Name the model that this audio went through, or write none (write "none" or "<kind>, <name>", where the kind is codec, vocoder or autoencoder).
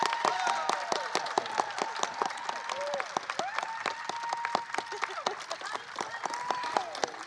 none